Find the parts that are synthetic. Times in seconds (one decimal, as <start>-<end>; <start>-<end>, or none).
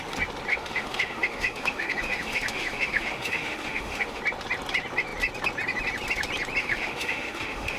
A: 0.5-4.2; 6.6-7.8